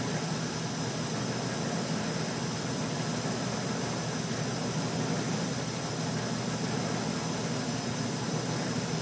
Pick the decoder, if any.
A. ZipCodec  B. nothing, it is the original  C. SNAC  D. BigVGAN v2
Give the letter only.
B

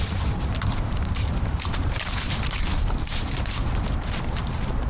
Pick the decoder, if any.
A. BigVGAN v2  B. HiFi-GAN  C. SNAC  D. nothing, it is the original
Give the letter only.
A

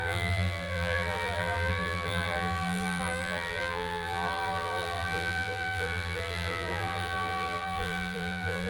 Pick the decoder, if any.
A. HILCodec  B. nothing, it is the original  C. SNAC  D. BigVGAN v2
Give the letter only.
D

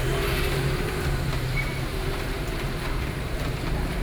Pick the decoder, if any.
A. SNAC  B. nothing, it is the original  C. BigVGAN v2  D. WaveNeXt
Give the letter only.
C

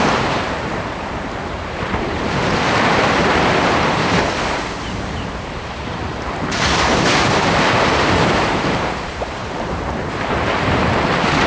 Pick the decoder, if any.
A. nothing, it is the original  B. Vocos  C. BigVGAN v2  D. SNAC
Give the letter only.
C